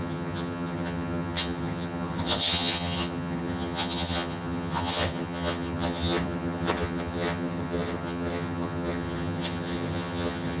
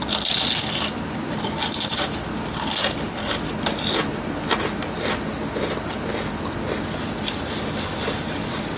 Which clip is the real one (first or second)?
second